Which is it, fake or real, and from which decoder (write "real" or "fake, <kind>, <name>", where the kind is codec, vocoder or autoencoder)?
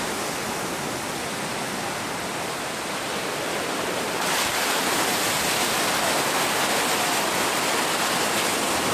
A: real